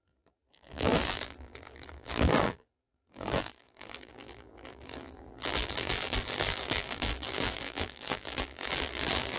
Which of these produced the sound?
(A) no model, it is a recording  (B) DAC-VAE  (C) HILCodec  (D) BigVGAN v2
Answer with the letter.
D